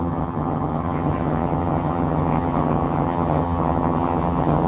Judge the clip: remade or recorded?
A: remade